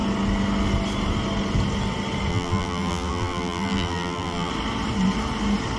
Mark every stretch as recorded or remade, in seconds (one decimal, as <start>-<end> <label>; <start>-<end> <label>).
0.0-2.3 recorded; 2.3-4.5 remade; 4.5-5.8 recorded